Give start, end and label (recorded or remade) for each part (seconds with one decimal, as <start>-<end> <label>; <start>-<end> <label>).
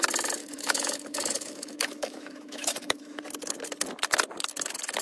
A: 0.0-0.4 recorded; 0.4-3.2 remade; 3.2-5.0 recorded